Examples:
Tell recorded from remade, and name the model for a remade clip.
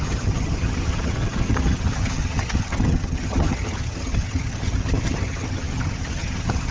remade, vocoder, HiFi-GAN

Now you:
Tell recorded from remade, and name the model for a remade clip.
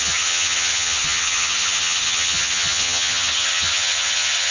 remade, vocoder, HiFi-GAN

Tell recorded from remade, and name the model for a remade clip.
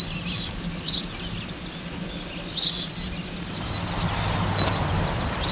recorded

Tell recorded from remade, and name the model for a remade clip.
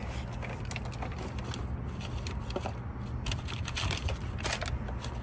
recorded